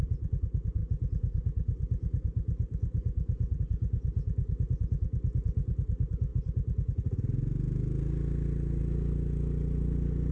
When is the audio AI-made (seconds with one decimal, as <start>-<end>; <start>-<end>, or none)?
none